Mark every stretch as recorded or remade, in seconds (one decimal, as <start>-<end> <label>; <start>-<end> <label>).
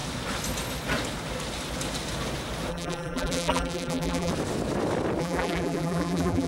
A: 0.0-2.7 recorded; 2.7-4.3 remade; 4.3-5.2 recorded; 5.2-6.5 remade